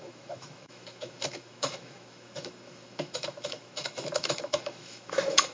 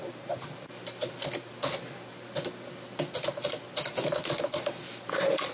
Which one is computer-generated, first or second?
first